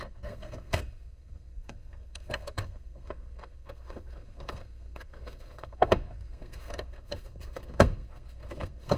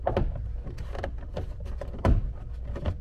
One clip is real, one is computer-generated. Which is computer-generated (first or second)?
first